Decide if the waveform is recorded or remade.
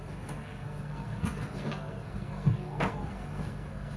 remade